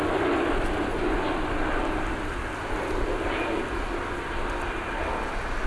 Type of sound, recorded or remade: recorded